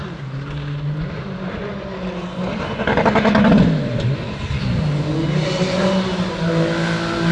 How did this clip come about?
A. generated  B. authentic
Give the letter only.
B